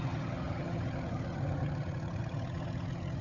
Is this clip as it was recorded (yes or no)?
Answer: no